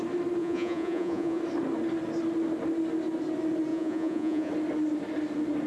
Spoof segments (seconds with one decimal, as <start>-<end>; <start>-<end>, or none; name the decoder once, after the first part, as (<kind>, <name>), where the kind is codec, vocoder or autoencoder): 0.4-1.4 (vocoder, Vocos); 3.7-4.5